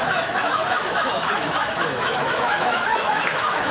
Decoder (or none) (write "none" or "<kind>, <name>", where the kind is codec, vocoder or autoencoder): autoencoder, DAC-VAE